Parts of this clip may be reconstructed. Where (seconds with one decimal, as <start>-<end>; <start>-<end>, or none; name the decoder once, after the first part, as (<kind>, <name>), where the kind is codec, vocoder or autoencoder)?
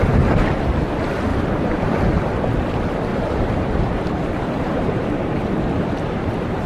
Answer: 1.3-2.0 (vocoder, BigVGAN v2); 3.1-6.7